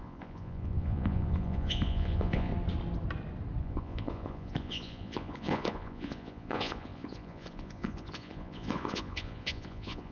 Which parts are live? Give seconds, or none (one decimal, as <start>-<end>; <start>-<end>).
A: 2.5-3.6